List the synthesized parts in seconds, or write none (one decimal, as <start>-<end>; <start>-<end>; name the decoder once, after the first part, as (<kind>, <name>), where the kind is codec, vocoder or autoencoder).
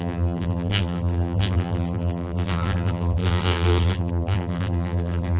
0.0-5.4 (vocoder, BigVGAN v2)